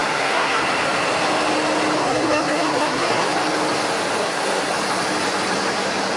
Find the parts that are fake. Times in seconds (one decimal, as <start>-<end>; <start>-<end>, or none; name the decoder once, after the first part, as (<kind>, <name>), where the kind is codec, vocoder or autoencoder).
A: 0.0-0.6 (codec, SNAC); 2.0-3.3; 4.2-4.7